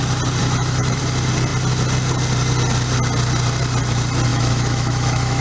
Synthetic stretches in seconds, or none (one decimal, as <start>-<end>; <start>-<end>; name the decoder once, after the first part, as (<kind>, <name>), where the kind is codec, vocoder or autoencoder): 0.4-1.0 (autoencoder, DAC-VAE); 4.3-5.4